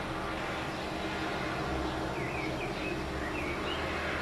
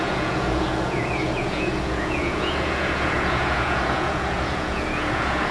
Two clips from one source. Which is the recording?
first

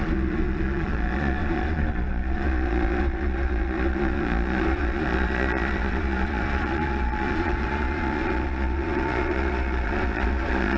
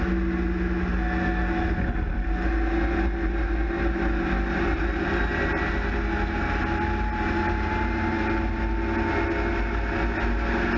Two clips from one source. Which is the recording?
second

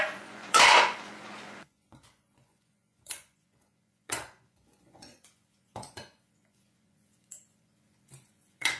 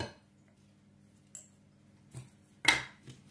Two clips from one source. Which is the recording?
second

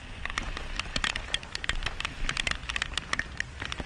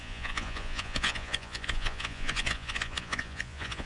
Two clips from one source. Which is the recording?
first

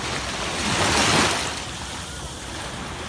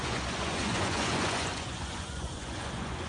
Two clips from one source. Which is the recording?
first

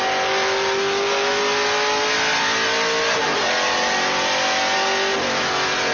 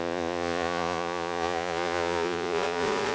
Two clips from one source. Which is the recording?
first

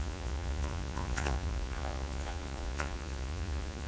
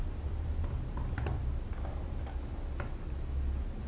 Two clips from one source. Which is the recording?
second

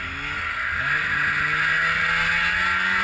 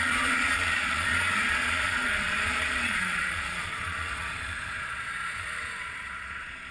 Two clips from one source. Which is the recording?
first